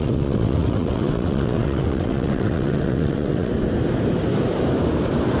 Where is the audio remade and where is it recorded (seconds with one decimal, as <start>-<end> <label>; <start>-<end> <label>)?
0.0-3.5 remade; 3.5-5.4 recorded